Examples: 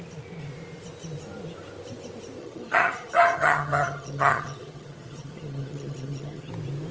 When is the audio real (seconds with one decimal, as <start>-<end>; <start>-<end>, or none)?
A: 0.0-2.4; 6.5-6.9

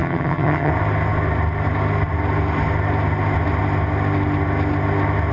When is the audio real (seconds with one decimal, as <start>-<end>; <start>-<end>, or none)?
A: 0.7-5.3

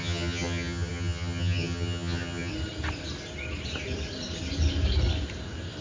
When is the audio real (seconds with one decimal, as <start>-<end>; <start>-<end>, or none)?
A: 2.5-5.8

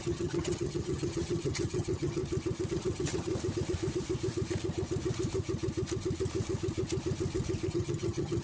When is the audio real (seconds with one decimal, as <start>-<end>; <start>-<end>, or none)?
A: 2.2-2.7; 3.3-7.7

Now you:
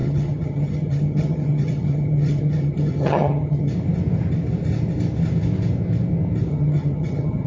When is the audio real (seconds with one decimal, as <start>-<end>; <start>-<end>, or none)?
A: 3.7-6.5

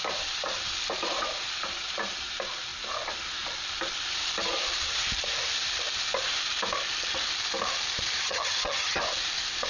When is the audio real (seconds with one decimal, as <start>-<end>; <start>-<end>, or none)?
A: 0.0-8.2; 9.0-9.7

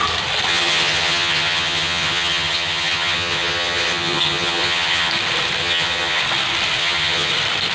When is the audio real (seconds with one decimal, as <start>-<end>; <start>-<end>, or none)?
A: 0.0-0.5; 5.1-5.6; 6.2-6.8; 7.3-7.7

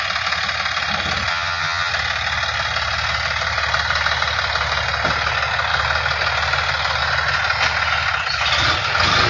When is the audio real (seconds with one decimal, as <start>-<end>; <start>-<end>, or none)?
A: 0.0-1.3; 1.9-9.3